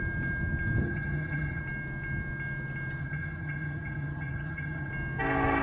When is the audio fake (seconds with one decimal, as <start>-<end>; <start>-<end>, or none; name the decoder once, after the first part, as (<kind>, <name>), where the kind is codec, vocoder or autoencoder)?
0.8-1.6 (vocoder, HiFi-GAN); 3.0-4.9